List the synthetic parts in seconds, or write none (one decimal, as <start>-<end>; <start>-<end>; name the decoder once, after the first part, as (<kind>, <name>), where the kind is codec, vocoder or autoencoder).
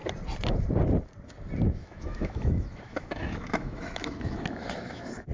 1.8-5.3 (autoencoder, DAC-VAE)